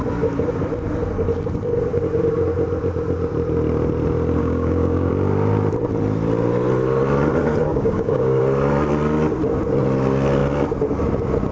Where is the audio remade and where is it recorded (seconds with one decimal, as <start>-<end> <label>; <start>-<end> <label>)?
0.0-4.4 recorded; 4.4-5.1 remade; 5.1-7.7 recorded; 7.7-8.4 remade; 8.4-11.5 recorded